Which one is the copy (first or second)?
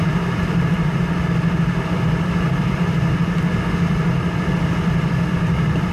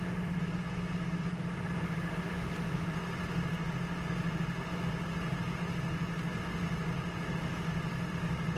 first